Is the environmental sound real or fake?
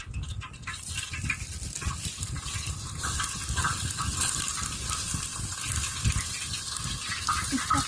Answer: real